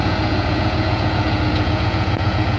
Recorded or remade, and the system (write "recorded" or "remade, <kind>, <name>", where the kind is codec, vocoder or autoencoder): remade, vocoder, Vocos